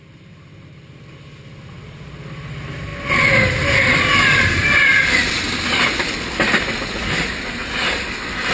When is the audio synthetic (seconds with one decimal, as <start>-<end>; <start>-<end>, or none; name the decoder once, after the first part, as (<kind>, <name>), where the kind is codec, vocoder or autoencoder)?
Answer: none

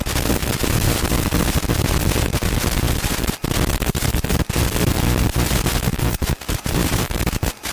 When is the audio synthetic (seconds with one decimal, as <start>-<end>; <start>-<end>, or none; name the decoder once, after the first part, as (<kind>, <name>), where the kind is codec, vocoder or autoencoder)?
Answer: 5.9-7.2 (vocoder, BigVGAN v2)

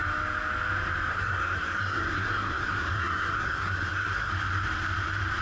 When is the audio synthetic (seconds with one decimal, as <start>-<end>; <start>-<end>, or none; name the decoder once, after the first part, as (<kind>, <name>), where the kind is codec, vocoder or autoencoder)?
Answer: 1.1-4.3 (codec, SNAC)

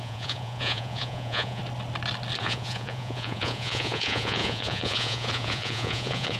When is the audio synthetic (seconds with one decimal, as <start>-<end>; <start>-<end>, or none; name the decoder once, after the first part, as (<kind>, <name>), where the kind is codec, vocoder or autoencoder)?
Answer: 0.0-1.6 (vocoder, Vocos); 2.4-6.4

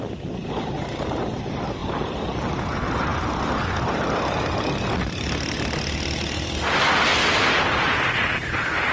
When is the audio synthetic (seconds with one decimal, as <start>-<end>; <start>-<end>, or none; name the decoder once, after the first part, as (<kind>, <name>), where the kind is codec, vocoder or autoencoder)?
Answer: 1.8-2.5 (vocoder, BigVGAN v2)

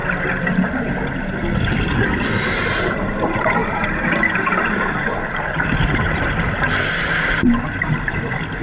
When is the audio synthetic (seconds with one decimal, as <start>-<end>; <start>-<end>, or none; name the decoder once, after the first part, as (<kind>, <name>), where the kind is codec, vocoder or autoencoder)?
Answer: 3.6-8.2 (vocoder, BigVGAN v2)